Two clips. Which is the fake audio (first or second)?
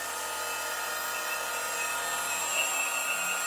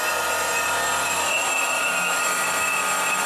second